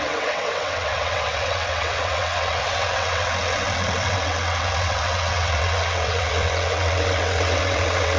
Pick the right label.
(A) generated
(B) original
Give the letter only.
A